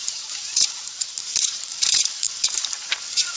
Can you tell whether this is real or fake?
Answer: fake